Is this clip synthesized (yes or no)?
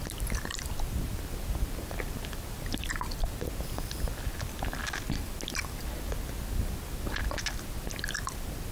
no